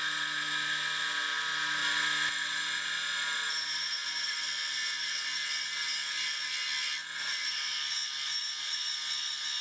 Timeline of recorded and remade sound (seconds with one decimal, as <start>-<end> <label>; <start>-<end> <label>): 0.0-9.6 recorded